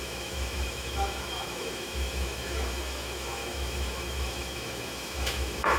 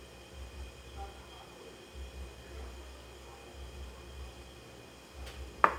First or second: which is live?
second